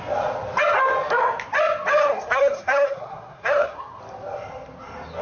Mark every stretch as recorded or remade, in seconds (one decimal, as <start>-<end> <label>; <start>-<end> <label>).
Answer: 0.0-2.0 recorded; 2.0-4.0 remade; 4.0-5.2 recorded